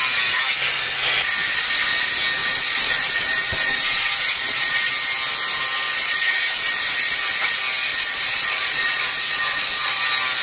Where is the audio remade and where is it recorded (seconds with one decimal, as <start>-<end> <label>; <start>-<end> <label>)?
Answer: 0.0-2.4 recorded; 2.4-4.9 remade; 4.9-6.0 recorded; 6.0-7.3 remade; 7.3-7.9 recorded; 7.9-10.0 remade; 10.0-10.4 recorded

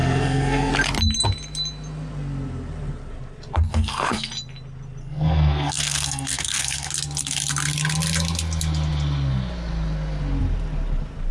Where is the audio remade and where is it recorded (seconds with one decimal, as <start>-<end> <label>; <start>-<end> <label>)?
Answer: 0.0-0.7 remade; 0.7-3.7 recorded; 3.7-4.3 remade; 4.3-5.0 recorded; 5.0-6.9 remade; 6.9-11.3 recorded